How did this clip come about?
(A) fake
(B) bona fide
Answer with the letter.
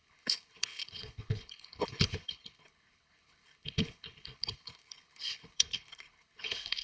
A